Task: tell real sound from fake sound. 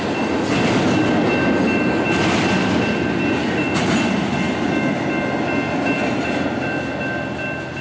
real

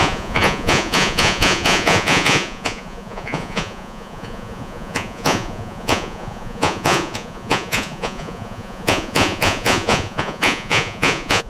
fake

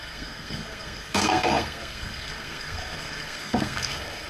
fake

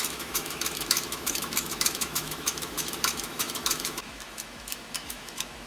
fake